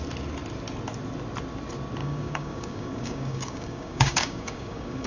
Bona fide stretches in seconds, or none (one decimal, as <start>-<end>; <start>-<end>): 0.0-2.0